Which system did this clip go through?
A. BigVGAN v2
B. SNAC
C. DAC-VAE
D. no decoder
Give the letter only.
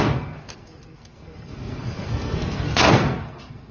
B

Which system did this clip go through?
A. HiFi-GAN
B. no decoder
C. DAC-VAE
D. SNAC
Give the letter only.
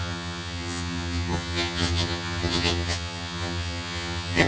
A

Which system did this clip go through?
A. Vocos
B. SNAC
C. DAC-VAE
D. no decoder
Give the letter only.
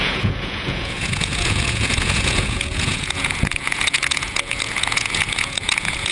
A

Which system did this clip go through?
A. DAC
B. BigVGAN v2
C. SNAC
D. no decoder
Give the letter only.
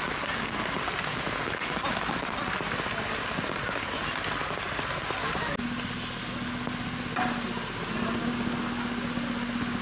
D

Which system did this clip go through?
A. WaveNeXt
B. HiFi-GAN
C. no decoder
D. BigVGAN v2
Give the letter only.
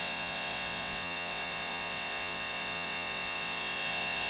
A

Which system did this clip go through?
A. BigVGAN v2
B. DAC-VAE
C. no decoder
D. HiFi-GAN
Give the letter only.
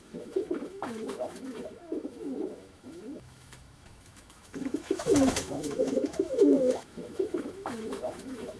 B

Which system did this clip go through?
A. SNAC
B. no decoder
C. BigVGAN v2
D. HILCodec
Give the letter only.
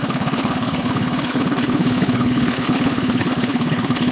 D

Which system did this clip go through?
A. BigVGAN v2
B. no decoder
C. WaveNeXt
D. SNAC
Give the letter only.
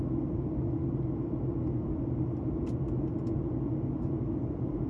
B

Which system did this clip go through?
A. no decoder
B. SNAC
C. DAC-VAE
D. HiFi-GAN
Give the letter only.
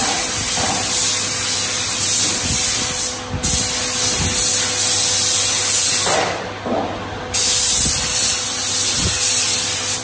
A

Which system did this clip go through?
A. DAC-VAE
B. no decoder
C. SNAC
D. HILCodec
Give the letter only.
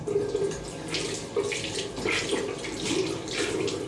B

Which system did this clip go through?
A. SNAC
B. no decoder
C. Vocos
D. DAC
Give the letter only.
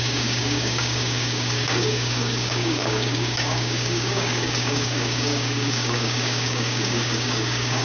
D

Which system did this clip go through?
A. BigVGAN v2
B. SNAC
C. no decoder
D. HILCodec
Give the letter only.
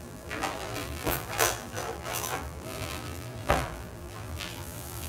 A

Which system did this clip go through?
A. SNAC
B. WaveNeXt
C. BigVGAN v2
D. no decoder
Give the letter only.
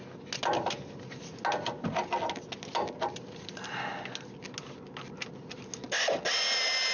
D